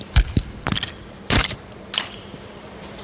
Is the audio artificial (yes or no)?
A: yes